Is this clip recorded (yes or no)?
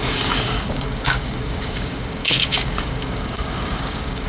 no